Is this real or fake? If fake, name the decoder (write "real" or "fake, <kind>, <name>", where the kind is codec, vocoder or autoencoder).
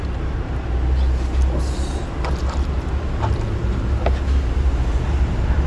real